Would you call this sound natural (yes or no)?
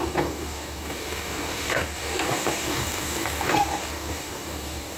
no